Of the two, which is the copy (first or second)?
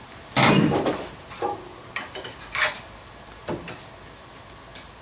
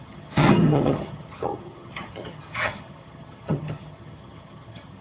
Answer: second